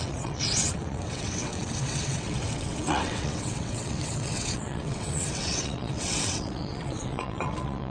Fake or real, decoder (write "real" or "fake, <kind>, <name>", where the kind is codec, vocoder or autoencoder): fake, vocoder, WaveNeXt